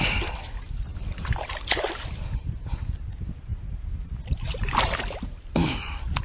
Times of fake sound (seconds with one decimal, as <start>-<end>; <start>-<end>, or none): 0.0-6.2